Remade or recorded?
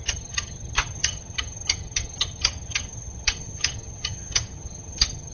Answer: remade